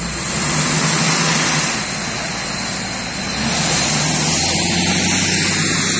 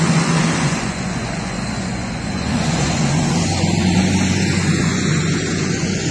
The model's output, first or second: second